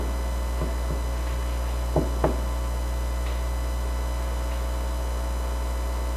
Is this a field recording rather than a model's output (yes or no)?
yes